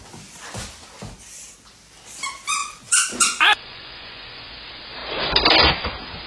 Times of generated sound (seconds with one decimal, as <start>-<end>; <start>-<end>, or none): 2.6-4.5